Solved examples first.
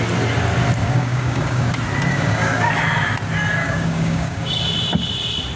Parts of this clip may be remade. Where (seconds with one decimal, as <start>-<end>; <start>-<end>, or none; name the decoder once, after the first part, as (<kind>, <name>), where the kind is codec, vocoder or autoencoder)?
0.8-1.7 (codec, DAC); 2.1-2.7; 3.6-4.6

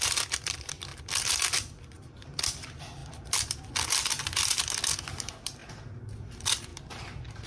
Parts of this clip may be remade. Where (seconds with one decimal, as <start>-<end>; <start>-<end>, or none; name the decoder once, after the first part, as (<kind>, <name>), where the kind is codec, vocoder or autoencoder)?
0.0-5.6 (vocoder, BigVGAN v2); 6.1-6.7

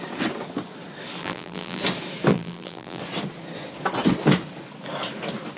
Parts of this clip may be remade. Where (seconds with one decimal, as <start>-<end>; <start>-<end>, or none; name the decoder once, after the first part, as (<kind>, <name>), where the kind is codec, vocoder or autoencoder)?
1.2-1.8 (vocoder, BigVGAN v2); 2.3-3.0